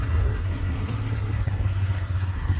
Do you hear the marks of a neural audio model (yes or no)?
yes